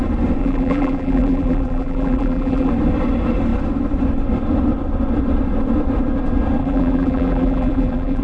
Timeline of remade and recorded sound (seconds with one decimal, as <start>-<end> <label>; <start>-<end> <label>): 0.0-0.4 recorded; 0.4-2.7 remade; 2.7-6.6 recorded; 6.6-8.2 remade